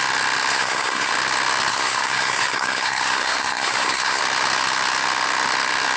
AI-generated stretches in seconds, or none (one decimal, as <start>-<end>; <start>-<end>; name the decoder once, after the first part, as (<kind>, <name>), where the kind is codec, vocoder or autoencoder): 0.5-1.1 (codec, SNAC); 1.7-4.2